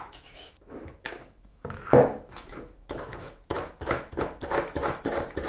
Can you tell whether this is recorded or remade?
remade